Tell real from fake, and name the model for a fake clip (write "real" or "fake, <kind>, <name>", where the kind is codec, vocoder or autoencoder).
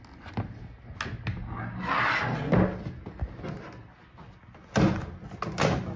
real